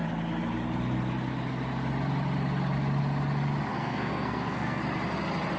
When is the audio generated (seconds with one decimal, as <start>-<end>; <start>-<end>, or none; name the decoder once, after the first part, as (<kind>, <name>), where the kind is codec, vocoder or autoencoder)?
3.7-4.8 (codec, SNAC)